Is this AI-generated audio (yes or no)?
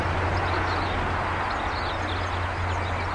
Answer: no